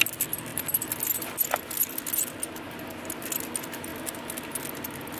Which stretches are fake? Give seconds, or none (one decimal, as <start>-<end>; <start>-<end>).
none